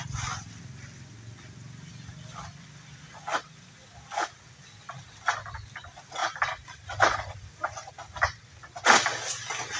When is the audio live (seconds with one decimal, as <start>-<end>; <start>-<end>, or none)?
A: 0.0-6.2; 7.9-9.8